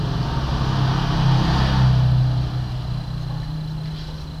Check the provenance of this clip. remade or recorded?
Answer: recorded